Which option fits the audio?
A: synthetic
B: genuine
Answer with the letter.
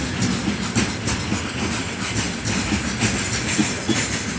B